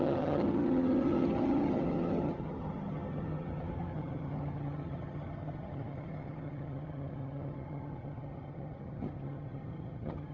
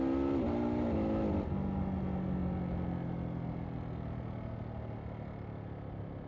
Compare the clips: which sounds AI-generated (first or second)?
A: first